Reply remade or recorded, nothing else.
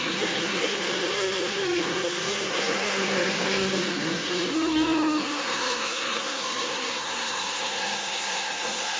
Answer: remade